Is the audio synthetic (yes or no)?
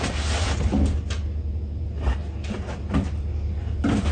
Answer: no